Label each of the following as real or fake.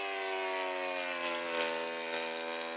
real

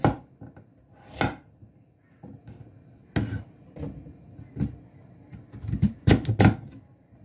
real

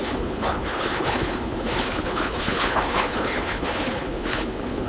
fake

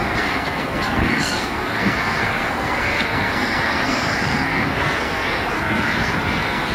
fake